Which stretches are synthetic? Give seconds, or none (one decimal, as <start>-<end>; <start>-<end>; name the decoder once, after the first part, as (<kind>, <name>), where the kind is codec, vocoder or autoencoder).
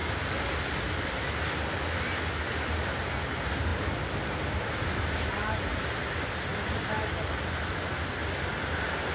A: none